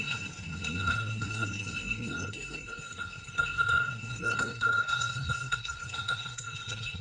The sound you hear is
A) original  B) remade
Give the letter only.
B